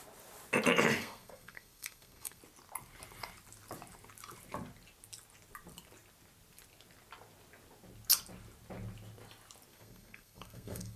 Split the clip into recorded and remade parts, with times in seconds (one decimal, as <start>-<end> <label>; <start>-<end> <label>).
0.0-1.0 recorded; 1.0-2.4 remade; 2.4-9.7 recorded; 9.7-11.0 remade